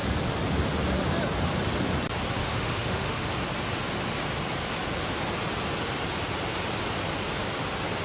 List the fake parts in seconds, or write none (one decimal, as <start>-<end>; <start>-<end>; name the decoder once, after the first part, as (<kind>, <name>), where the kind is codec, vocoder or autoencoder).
2.4-3.3 (autoencoder, DAC-VAE)